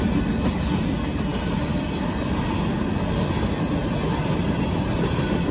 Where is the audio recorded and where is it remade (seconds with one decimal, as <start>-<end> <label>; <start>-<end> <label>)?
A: 0.0-5.5 recorded